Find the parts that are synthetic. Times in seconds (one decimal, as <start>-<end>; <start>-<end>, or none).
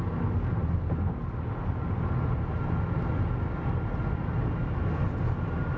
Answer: none